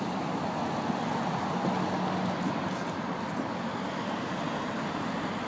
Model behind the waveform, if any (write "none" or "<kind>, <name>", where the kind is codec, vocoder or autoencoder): none